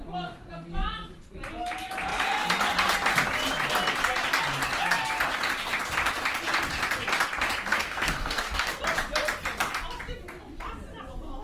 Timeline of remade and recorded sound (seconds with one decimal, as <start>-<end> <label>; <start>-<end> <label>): 0.0-7.7 recorded; 7.7-8.8 remade; 8.8-11.4 recorded